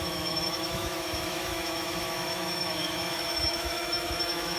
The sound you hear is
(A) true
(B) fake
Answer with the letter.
B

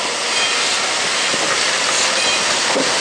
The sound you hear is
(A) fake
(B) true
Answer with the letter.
B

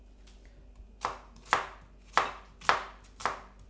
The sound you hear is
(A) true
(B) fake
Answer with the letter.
A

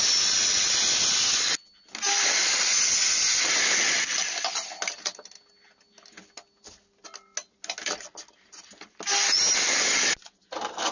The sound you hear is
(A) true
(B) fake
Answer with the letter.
A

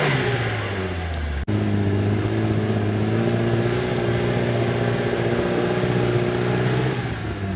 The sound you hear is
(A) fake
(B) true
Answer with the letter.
B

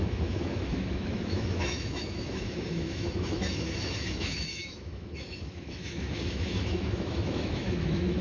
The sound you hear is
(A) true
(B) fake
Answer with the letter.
B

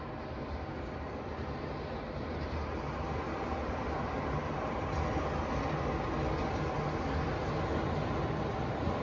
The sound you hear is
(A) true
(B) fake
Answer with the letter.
A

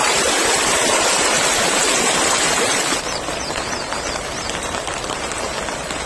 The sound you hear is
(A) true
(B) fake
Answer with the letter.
B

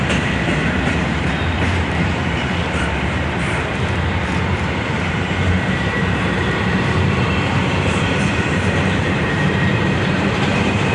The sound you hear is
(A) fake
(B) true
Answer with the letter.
A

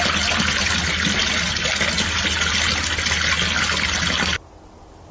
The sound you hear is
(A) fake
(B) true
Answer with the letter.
B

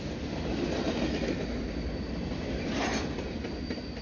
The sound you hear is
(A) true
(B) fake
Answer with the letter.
A